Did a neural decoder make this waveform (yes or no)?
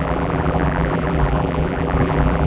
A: yes